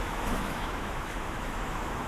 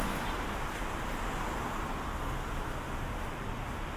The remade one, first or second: first